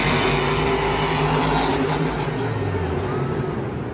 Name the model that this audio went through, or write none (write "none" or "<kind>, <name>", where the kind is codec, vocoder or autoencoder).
none